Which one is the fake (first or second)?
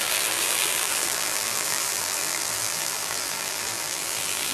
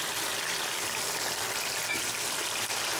first